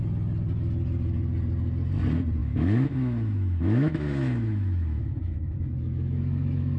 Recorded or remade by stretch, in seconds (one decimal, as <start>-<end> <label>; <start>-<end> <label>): 0.0-2.4 recorded; 2.4-6.8 remade